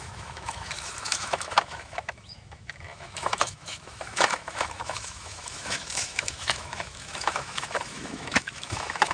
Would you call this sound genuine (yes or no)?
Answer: no